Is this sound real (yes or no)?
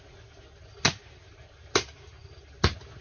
yes